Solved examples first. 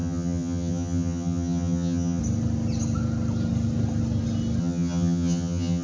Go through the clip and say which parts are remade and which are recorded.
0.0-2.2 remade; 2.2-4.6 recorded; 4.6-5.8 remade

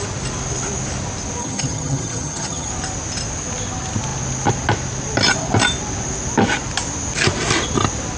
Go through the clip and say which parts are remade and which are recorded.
0.0-1.4 recorded; 1.4-2.7 remade; 2.7-8.2 recorded

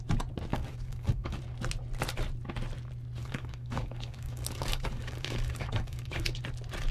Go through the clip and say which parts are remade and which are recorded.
0.0-0.5 recorded; 0.5-1.4 remade; 1.4-3.2 recorded; 3.2-6.4 remade; 6.4-6.9 recorded

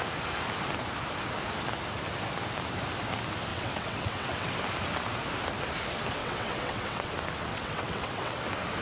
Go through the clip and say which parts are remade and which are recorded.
0.0-3.5 recorded; 3.5-4.5 remade; 4.5-6.2 recorded; 6.2-7.1 remade; 7.1-7.5 recorded; 7.5-8.4 remade; 8.4-8.8 recorded